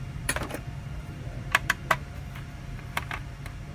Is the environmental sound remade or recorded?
remade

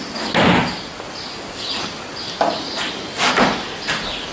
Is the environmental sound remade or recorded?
recorded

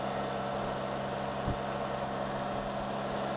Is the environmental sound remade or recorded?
recorded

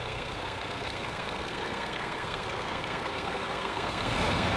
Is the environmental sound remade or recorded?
remade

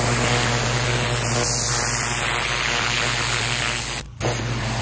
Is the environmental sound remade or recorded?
recorded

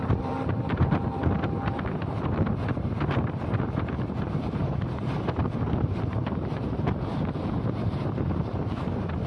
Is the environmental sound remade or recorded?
remade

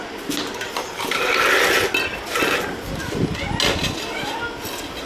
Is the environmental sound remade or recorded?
recorded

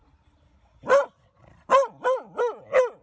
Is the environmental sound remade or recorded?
recorded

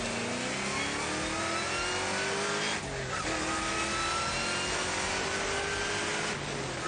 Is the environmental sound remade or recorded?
recorded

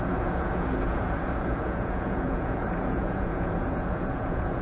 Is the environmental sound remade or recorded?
remade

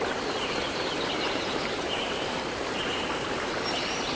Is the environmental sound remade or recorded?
remade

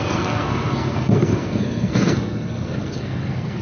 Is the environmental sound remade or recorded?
remade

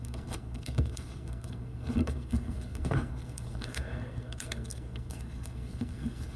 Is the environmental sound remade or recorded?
remade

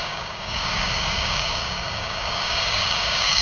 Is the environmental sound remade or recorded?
remade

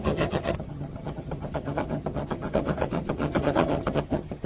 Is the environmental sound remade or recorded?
remade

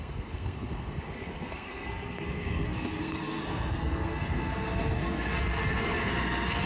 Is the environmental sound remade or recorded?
remade